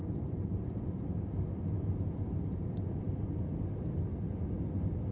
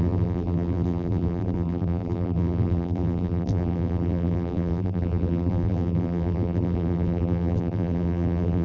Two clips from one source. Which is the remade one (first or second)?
second